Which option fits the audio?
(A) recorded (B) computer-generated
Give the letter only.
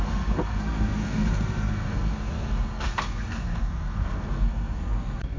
B